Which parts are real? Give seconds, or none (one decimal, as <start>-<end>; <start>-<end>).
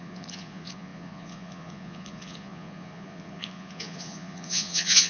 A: none